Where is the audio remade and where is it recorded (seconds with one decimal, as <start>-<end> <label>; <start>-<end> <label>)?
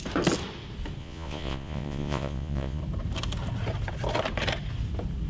0.0-1.0 recorded; 1.0-2.8 remade; 2.8-5.3 recorded